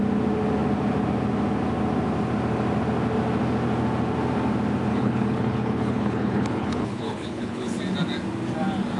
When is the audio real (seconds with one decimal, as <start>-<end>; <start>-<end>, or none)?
0.0-4.9; 7.8-9.0